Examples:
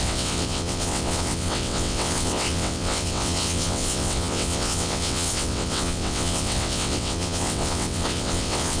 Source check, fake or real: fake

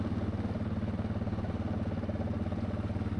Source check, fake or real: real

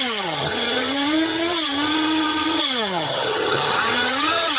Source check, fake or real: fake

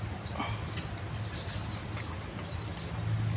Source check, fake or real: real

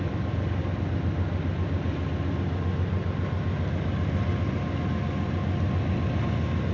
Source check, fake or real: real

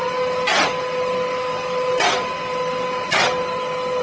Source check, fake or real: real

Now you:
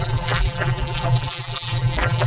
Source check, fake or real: fake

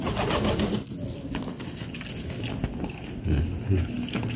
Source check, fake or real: real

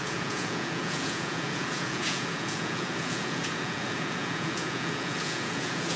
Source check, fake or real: fake